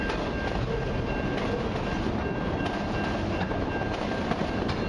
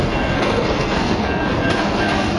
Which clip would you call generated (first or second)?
second